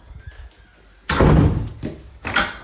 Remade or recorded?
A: recorded